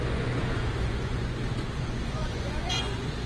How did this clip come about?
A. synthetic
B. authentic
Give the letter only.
A